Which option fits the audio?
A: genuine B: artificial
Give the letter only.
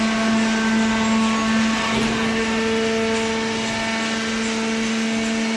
A